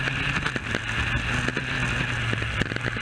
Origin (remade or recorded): recorded